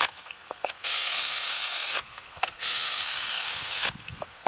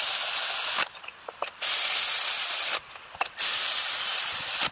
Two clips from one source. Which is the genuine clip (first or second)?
second